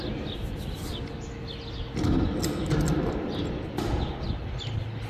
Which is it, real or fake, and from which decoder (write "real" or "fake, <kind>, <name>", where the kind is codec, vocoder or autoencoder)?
real